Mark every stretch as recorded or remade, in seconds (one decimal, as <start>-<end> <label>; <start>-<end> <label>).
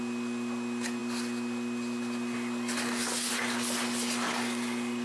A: 0.0-5.0 recorded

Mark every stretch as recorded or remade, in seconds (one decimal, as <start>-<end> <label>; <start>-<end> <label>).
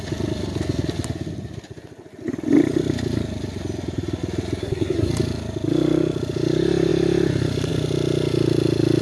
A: 0.0-4.6 recorded; 4.6-5.1 remade; 5.1-9.0 recorded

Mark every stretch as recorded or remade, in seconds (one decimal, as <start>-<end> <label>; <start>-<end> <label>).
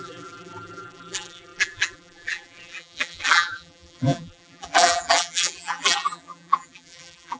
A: 0.0-7.4 remade